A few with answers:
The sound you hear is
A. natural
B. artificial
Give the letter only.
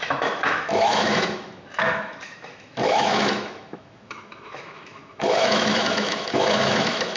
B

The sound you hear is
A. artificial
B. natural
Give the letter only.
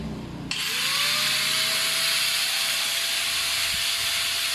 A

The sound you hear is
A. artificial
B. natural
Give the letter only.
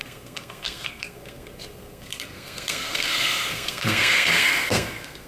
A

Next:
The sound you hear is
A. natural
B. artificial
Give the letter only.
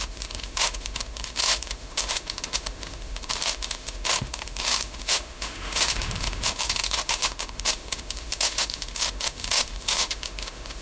B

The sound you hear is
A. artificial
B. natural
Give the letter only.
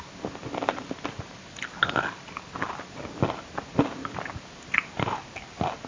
B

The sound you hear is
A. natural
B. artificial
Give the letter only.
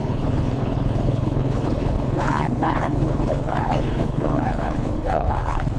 B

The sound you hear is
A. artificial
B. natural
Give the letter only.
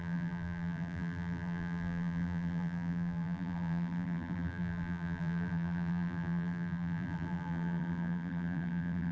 A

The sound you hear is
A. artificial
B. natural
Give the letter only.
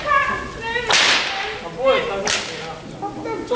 B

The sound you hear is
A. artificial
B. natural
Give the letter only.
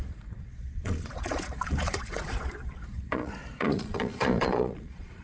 A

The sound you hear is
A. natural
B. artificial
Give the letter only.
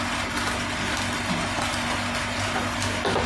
A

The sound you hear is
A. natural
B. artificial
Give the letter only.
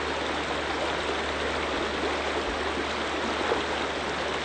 A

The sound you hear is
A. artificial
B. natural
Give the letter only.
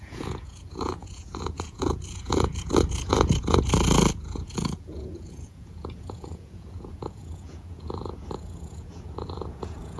A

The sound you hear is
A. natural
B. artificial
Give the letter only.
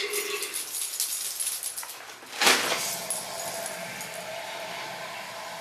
A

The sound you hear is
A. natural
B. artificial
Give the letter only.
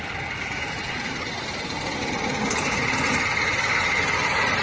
A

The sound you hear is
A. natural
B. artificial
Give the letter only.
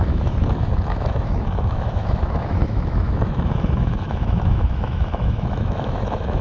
B